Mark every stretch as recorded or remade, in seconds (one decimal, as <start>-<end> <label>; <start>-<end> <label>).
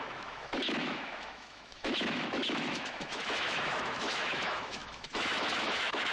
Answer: 0.0-6.1 remade